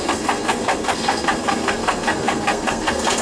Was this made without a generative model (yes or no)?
no